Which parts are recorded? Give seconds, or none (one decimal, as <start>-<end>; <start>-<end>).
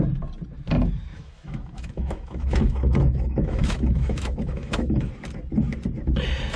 0.0-1.1; 5.1-6.6